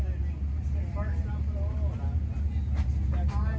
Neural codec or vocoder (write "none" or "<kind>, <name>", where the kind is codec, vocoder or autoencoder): none